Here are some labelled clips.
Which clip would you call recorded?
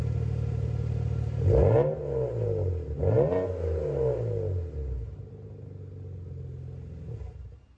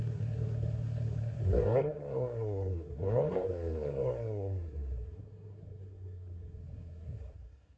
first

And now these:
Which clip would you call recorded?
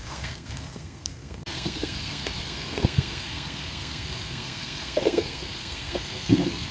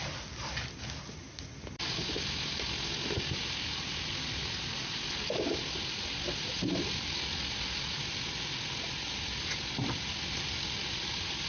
second